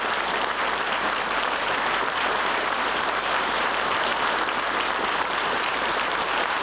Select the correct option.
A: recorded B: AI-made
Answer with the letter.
B